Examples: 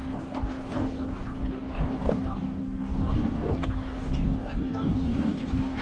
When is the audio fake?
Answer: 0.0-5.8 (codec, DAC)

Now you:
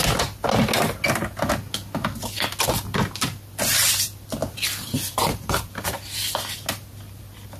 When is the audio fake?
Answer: 4.4-6.1 (vocoder, BigVGAN v2)

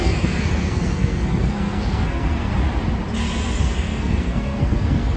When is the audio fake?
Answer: 0.0-2.5 (codec, SNAC); 3.6-5.2

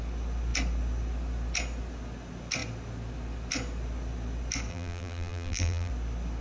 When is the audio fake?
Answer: 4.7-5.9 (vocoder, BigVGAN v2)

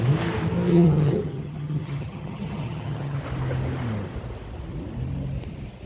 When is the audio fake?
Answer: 0.7-3.2 (vocoder, HiFi-GAN)

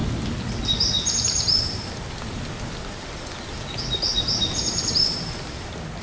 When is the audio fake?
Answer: 1.1-6.0 (vocoder, BigVGAN v2)

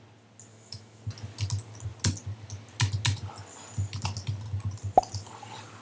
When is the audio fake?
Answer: 0.5-1.0 (autoencoder, DAC-VAE)